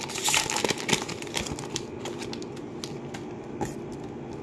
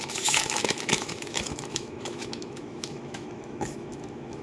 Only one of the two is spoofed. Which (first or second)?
second